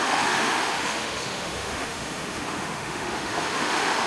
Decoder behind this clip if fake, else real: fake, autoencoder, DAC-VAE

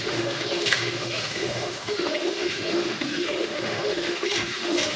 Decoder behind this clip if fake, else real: fake, autoencoder, DAC-VAE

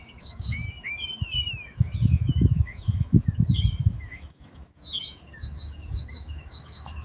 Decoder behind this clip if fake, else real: fake, autoencoder, DAC-VAE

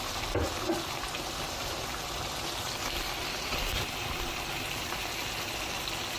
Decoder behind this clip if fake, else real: real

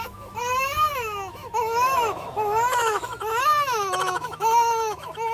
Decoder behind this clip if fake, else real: fake, autoencoder, DAC-VAE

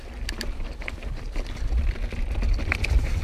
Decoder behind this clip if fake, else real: real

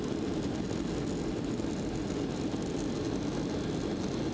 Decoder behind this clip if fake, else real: real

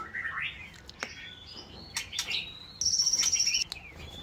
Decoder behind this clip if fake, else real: real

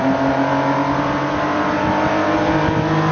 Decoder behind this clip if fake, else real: real